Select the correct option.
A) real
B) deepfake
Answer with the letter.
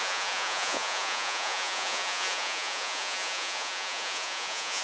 B